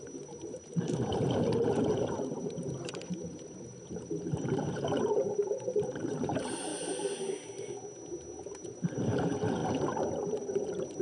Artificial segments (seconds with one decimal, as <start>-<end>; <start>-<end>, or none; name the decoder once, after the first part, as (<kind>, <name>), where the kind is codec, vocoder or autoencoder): 0.0-6.7 (vocoder, BigVGAN v2); 8.4-9.6; 10.1-11.0